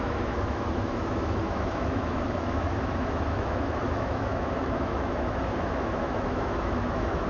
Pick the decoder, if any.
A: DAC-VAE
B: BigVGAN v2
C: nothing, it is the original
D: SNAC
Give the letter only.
A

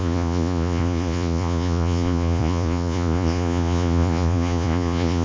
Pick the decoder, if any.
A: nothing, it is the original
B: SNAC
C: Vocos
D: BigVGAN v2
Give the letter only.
C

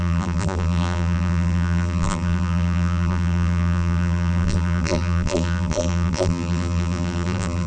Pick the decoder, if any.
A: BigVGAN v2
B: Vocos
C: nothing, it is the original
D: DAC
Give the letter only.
A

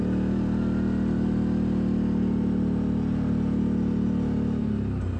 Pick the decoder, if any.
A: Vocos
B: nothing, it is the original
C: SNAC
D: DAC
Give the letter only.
B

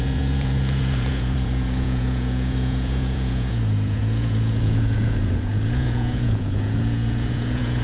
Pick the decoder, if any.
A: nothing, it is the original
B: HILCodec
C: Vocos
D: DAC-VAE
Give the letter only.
C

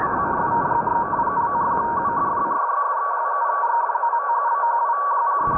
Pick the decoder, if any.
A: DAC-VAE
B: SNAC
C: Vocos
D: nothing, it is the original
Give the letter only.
D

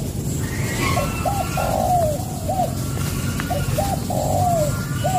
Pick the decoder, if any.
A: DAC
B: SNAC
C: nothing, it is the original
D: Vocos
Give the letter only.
C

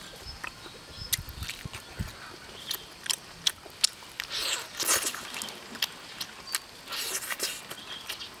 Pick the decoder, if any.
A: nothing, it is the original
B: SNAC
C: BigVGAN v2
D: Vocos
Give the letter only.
A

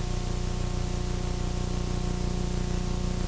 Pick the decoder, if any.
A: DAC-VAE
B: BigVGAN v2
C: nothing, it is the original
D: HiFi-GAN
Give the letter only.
C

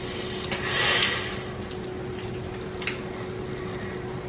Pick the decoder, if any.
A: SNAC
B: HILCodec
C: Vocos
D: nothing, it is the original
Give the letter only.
D